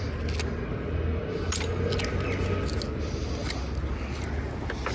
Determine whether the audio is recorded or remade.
recorded